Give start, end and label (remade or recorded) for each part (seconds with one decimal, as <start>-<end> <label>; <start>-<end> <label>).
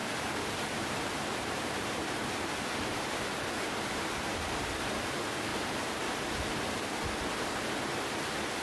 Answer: 0.0-2.5 remade; 2.5-4.3 recorded; 4.3-4.8 remade; 4.8-5.5 recorded; 5.5-6.2 remade; 6.2-8.6 recorded